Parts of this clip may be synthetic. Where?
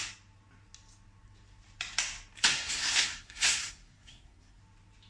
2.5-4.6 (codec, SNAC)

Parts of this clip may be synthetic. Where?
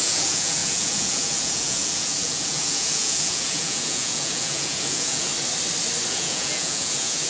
0.0-5.3 (vocoder, Vocos); 6.1-7.3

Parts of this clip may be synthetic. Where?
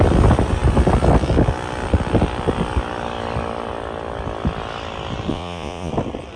5.3-5.9 (vocoder, Vocos)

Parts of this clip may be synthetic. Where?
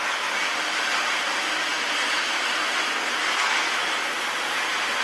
none